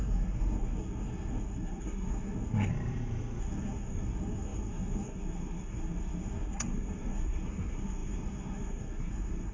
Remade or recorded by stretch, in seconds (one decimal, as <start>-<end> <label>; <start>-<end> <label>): 0.0-2.7 remade; 2.7-3.4 recorded; 3.4-9.5 remade